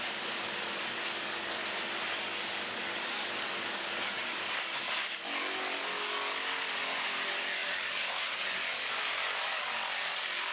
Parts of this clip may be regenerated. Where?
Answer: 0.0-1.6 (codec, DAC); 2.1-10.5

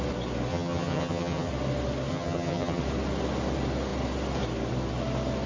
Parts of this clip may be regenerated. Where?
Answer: 0.5-1.5 (vocoder, HiFi-GAN); 2.1-2.8

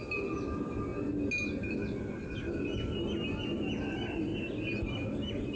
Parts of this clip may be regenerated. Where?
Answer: none

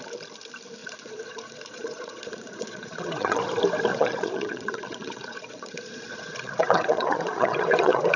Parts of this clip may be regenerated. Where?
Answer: 0.8-3.4 (vocoder, Vocos); 3.9-8.2

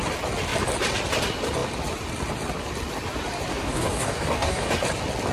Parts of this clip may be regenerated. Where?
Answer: 3.5-4.7 (codec, DAC)

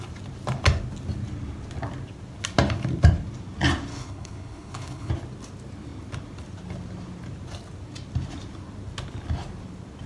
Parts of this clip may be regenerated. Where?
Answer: 3.9-5.1 (codec, HILCodec)